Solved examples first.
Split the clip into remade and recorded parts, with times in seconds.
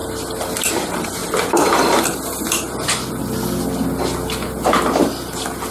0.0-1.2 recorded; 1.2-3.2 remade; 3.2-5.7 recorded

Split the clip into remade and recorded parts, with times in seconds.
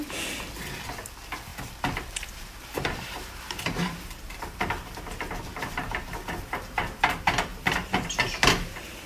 0.0-1.5 recorded; 1.5-5.0 remade; 5.0-5.5 recorded; 5.5-6.8 remade; 6.8-7.5 recorded; 7.5-8.1 remade; 8.1-9.1 recorded